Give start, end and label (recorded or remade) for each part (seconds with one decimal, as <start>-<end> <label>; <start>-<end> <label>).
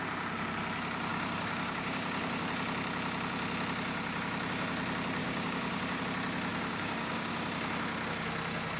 0.0-1.1 recorded; 1.1-2.5 remade; 2.5-5.2 recorded; 5.2-6.0 remade; 6.0-6.5 recorded; 6.5-7.3 remade; 7.3-8.8 recorded